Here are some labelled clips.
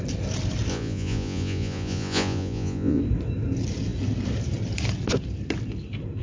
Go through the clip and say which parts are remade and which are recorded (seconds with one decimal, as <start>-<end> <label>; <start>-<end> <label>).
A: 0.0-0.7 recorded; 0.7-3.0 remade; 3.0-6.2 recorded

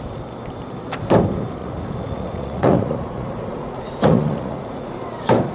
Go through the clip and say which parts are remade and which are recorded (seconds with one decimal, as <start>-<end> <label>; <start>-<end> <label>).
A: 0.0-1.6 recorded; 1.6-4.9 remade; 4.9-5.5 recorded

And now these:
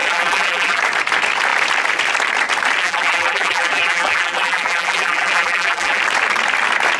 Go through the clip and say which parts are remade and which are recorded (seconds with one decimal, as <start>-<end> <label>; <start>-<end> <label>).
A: 0.0-0.8 remade; 0.8-2.8 recorded; 2.8-6.0 remade; 6.0-7.0 recorded

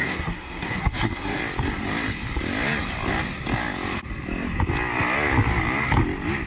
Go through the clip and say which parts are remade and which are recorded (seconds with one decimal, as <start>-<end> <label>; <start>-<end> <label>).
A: 0.0-1.4 remade; 1.4-6.5 recorded